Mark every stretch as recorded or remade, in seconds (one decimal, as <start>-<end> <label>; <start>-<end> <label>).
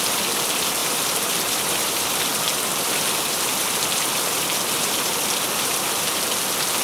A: 0.0-0.8 recorded; 0.8-2.1 remade; 2.1-2.7 recorded; 2.7-5.9 remade; 5.9-6.8 recorded